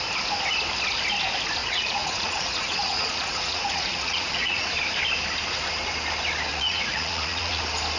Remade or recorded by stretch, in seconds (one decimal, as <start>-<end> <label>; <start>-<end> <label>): 0.0-1.6 recorded; 1.6-4.7 remade; 4.7-6.5 recorded; 6.5-7.6 remade; 7.6-8.0 recorded